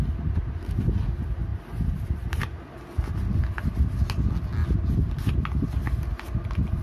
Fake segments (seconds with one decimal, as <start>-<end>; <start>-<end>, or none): 1.5-2.6